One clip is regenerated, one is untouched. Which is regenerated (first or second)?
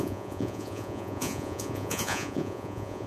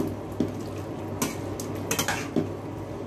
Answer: first